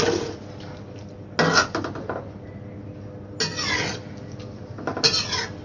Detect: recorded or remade recorded